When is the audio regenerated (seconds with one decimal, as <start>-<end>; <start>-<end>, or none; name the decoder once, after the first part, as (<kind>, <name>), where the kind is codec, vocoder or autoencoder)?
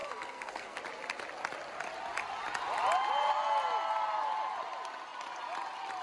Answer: 0.0-0.8 (codec, SNAC)